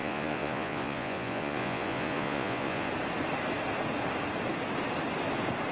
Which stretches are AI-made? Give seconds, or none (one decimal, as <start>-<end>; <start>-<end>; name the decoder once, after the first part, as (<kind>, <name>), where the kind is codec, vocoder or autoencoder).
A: 0.0-2.9 (vocoder, Vocos)